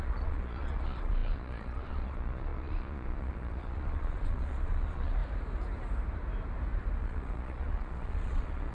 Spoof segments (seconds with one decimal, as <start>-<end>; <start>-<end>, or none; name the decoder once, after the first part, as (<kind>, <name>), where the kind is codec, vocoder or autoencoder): 0.0-5.2 (vocoder, Vocos); 7.0-8.7